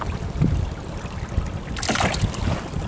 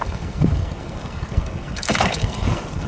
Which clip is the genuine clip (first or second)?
first